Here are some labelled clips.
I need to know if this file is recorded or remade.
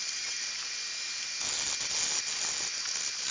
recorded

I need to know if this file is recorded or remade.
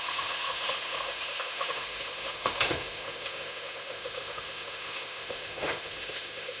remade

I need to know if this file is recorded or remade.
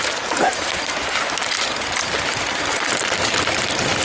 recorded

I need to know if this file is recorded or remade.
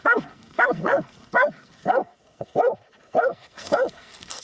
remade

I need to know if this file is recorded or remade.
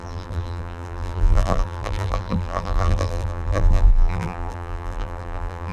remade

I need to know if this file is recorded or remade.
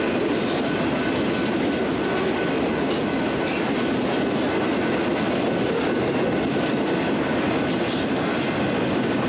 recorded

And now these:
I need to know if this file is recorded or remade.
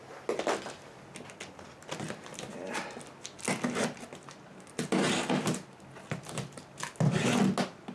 recorded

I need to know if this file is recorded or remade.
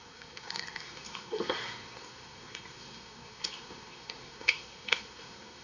remade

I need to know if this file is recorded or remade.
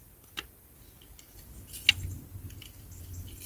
recorded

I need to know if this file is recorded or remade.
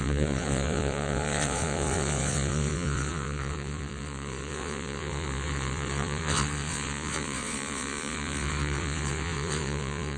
remade